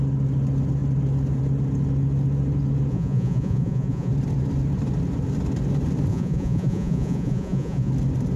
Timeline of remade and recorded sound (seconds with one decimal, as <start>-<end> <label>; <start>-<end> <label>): 0.0-2.9 recorded; 2.9-4.1 remade; 4.1-6.1 recorded; 6.1-7.9 remade; 7.9-8.4 recorded